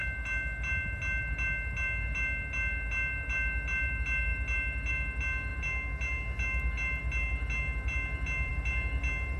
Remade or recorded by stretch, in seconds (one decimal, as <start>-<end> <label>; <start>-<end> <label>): 0.0-9.4 recorded